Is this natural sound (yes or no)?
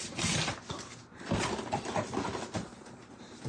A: yes